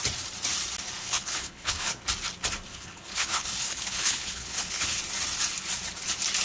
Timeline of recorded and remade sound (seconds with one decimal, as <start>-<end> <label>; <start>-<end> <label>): 0.0-1.0 recorded; 1.0-2.0 remade; 2.0-2.7 recorded; 2.7-5.0 remade; 5.0-6.4 recorded